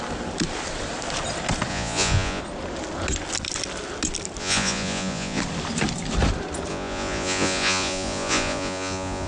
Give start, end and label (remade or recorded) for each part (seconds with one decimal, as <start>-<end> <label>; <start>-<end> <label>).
0.0-1.7 recorded; 1.7-2.4 remade; 2.4-4.4 recorded; 4.4-5.4 remade; 5.4-6.7 recorded; 6.7-9.3 remade